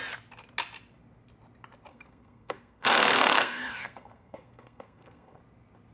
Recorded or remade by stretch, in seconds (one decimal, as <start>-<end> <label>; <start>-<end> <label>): 0.0-1.9 recorded; 1.9-5.4 remade; 5.4-5.9 recorded

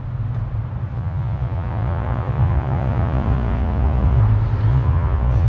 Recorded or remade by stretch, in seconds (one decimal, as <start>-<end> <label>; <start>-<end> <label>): 0.0-0.9 recorded; 0.9-4.2 remade; 4.2-4.7 recorded; 4.7-5.5 remade

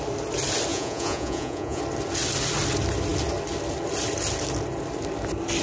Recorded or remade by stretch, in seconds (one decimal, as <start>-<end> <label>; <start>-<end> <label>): 0.0-0.7 recorded; 0.7-1.8 remade; 1.8-5.6 recorded